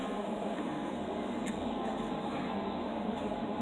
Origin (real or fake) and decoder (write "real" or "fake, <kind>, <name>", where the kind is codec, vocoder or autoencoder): fake, codec, SNAC